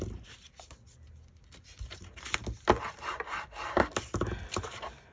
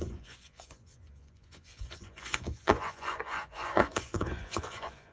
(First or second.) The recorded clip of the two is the first